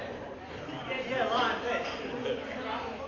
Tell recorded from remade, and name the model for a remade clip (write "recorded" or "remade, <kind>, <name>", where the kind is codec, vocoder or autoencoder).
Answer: recorded